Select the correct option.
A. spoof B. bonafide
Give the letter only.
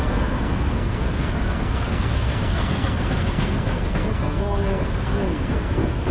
A